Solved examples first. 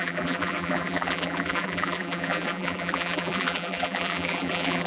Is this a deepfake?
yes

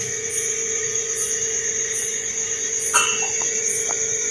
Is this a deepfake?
yes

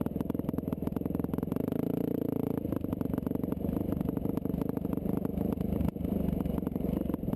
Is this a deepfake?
no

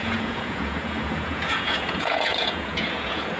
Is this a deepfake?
yes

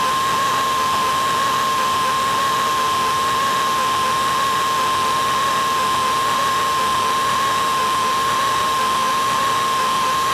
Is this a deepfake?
yes